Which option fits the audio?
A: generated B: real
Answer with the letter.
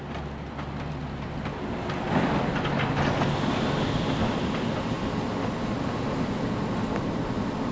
B